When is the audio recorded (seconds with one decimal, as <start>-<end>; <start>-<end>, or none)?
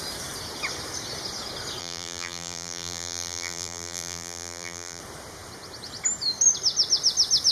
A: 0.0-1.8; 5.0-7.5